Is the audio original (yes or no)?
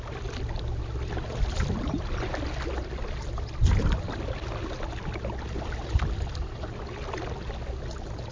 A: yes